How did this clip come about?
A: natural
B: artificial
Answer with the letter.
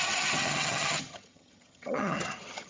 B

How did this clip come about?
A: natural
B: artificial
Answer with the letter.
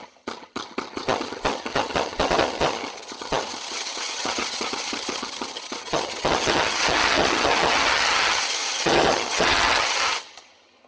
B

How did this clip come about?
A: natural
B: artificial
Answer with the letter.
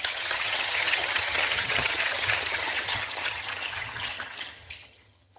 B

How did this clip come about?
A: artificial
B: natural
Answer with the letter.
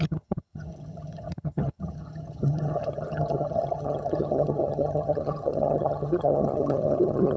A